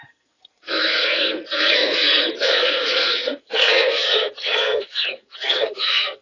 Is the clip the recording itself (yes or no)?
no